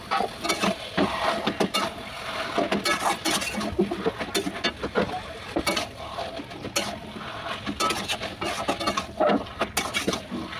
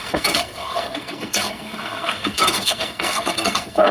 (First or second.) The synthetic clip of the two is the second